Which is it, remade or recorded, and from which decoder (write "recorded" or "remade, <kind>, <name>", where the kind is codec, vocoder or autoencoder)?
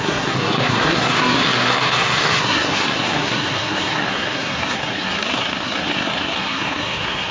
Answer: remade, codec, SNAC